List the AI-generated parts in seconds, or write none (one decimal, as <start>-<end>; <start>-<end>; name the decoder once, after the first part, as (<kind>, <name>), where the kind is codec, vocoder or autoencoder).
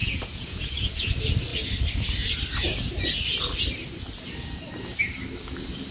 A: 0.0-1.1 (vocoder, Vocos)